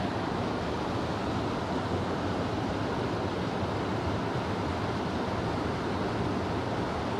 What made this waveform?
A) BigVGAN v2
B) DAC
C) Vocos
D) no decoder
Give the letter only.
D